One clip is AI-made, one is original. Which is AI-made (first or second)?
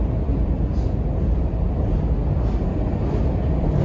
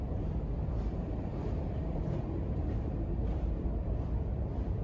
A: second